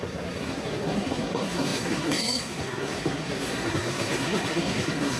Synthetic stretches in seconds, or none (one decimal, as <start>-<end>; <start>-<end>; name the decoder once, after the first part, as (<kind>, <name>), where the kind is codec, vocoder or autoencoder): 0.0-5.2 (codec, SNAC)